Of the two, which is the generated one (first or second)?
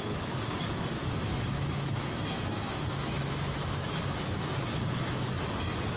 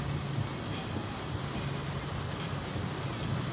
first